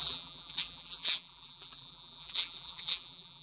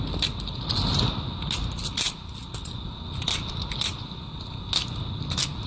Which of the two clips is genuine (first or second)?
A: second